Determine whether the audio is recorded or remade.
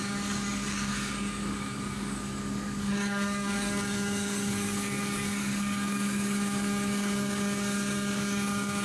remade